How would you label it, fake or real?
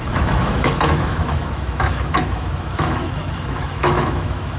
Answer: fake